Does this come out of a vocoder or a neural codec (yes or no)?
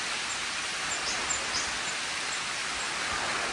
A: no